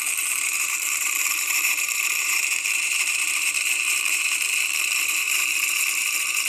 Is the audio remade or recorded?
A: remade